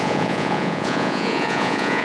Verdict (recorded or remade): remade